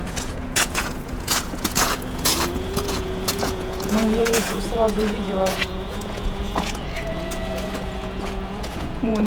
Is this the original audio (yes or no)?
no